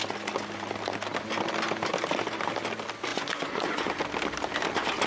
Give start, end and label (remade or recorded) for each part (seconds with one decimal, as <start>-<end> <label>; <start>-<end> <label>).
0.0-3.1 recorded; 3.1-3.9 remade; 3.9-5.1 recorded